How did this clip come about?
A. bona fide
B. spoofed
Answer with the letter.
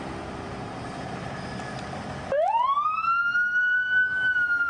A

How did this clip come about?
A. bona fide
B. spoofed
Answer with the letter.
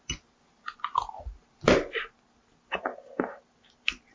A